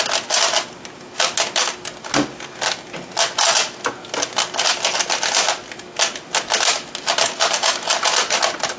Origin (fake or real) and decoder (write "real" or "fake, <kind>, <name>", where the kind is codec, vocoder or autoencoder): real